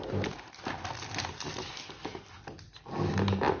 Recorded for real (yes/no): yes